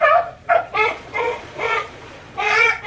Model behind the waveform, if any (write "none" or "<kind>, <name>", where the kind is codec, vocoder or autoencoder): vocoder, Vocos